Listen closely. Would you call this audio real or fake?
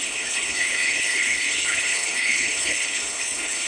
fake